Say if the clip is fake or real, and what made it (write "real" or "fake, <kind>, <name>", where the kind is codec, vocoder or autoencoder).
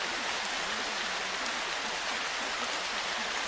real